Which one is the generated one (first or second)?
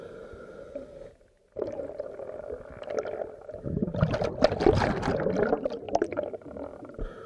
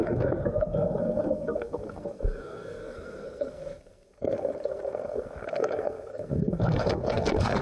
second